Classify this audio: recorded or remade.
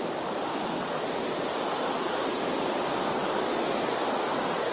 recorded